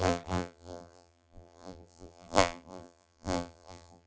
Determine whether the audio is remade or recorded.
remade